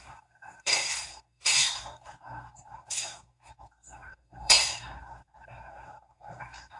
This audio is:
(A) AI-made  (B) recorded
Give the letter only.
A